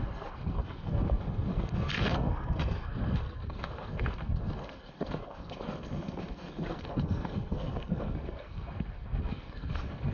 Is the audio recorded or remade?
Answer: remade